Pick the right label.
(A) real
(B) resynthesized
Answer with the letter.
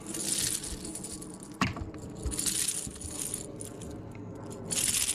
A